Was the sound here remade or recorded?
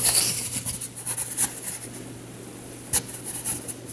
remade